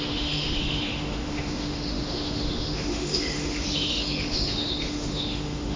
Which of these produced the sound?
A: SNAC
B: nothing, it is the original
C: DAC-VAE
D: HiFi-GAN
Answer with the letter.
C